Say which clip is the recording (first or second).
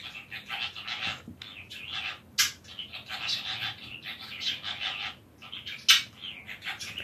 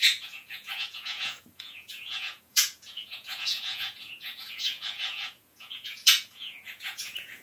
first